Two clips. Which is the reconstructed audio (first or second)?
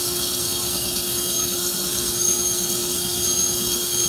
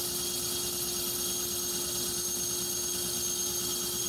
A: first